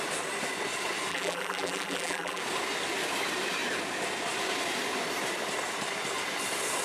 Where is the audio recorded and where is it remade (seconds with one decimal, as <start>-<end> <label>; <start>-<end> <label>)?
0.0-1.1 recorded; 1.1-2.4 remade; 2.4-6.8 recorded